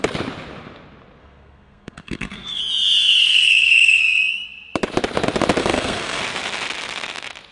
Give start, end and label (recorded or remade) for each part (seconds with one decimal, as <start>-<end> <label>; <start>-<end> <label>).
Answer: 0.0-1.2 recorded; 1.2-2.6 remade; 2.6-3.2 recorded; 3.2-4.0 remade; 4.0-5.6 recorded; 5.6-6.2 remade; 6.2-7.5 recorded